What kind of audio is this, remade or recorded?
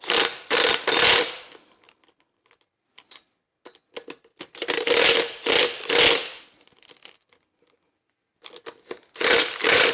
recorded